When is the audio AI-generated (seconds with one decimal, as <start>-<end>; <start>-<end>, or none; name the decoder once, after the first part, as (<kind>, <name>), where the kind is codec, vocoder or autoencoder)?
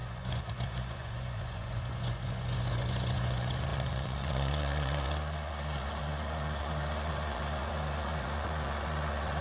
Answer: 0.0-9.4 (vocoder, Vocos)